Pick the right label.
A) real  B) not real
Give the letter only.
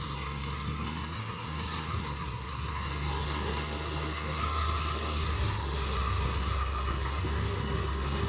B